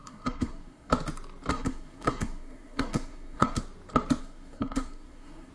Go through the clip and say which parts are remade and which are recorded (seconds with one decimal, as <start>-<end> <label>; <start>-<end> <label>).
0.0-0.9 remade; 0.9-1.5 recorded; 1.5-3.6 remade; 3.6-4.2 recorded; 4.2-5.5 remade